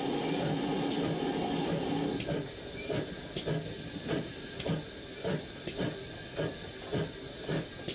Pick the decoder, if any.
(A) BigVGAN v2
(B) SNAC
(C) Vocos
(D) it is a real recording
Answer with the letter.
D